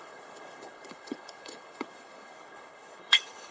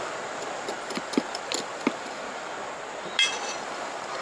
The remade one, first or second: first